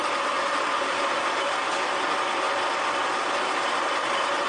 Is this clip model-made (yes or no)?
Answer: no